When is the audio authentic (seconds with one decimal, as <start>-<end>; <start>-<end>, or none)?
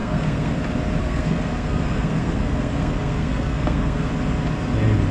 0.6-1.0; 4.1-5.1